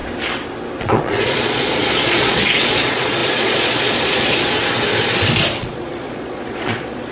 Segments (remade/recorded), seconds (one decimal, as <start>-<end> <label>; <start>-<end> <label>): 0.0-0.8 recorded; 0.8-4.6 remade; 4.6-5.6 recorded; 5.6-7.1 remade